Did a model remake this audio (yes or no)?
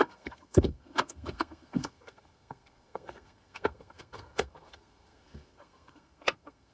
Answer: yes